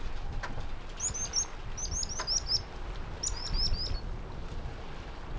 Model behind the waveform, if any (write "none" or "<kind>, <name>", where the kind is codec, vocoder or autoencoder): none